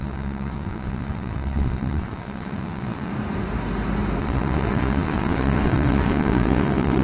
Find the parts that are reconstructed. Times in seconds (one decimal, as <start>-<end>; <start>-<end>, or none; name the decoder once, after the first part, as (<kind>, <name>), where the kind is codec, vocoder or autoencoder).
0.0-3.1 (vocoder, WaveNeXt); 4.2-7.0